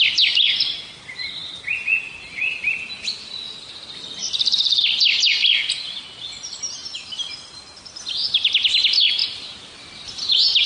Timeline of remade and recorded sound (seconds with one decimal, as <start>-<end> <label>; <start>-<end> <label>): 0.0-10.7 recorded